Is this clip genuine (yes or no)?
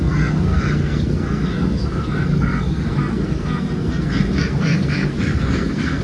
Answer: no